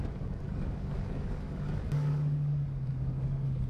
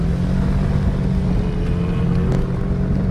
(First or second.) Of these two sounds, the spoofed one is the first